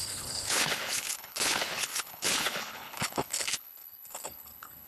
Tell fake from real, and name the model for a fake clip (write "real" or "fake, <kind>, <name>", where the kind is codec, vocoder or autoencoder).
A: fake, codec, HILCodec